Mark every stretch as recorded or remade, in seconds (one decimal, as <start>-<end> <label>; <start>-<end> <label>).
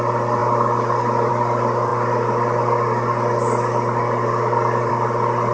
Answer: 0.0-5.5 recorded